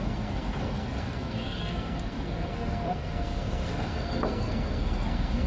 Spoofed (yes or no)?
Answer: yes